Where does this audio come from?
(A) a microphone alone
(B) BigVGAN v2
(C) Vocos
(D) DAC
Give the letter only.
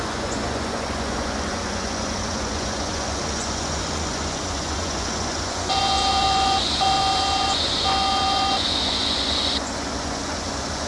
C